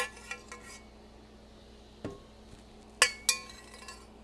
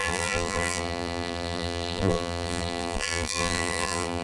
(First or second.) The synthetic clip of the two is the second